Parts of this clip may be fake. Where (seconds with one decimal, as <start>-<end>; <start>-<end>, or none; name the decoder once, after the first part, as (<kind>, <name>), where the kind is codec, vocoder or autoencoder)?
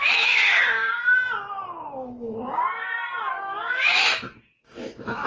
0.0-0.4 (autoencoder, DAC-VAE); 3.3-5.3